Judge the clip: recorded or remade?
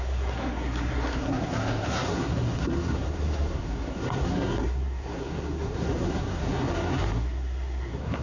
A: remade